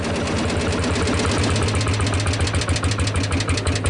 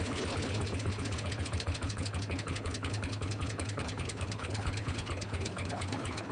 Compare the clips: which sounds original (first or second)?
first